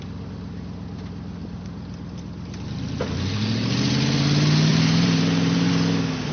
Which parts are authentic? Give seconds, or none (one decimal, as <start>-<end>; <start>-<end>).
0.0-4.7; 5.7-6.3